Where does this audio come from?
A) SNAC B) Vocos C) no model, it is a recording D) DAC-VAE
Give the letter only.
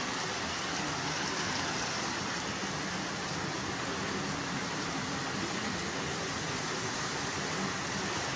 C